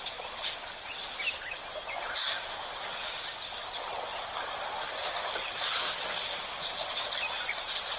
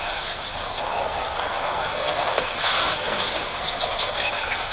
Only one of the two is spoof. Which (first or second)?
second